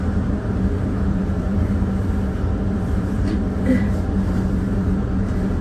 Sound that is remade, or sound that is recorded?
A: remade